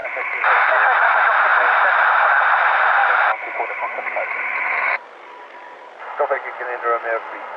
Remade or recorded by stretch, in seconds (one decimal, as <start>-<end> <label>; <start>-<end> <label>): 0.0-0.6 remade; 0.6-3.0 recorded; 3.0-6.0 remade; 6.0-7.6 recorded